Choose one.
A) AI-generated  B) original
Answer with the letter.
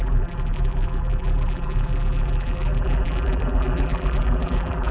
A